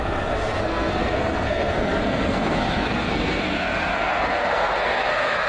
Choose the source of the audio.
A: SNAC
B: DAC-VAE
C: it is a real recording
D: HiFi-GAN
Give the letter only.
A